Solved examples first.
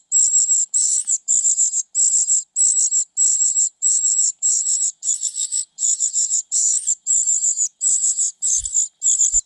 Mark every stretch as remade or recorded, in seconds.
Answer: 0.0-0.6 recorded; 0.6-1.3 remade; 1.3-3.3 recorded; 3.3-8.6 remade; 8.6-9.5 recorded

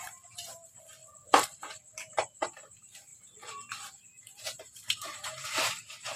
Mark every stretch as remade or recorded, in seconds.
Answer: 0.0-1.0 remade; 1.0-1.6 recorded; 1.6-3.1 remade; 3.1-3.7 recorded; 3.7-6.2 remade

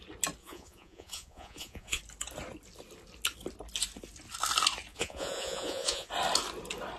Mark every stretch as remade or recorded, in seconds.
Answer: 0.0-0.4 recorded; 0.4-2.0 remade; 2.0-4.9 recorded; 4.9-6.1 remade; 6.1-7.0 recorded

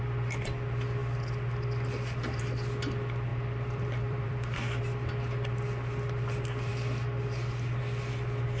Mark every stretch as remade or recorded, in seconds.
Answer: 0.0-3.3 recorded; 3.3-4.8 remade; 4.8-8.6 recorded

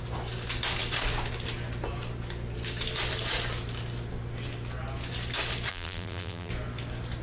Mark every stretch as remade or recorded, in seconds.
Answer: 0.0-5.7 recorded; 5.7-6.5 remade; 6.5-7.2 recorded

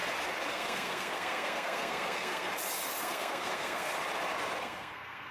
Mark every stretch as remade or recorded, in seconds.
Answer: 0.0-0.5 recorded; 0.5-2.5 remade; 2.5-3.0 recorded; 3.0-3.9 remade; 3.9-4.6 recorded; 4.6-5.3 remade

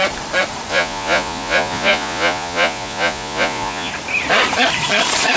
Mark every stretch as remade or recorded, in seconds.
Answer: 0.0-0.7 recorded; 0.7-3.9 remade; 3.9-5.4 recorded

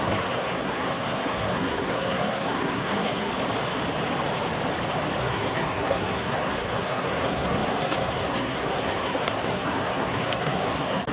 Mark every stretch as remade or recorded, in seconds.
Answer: 0.0-3.3 remade; 3.3-5.2 recorded; 5.2-11.1 remade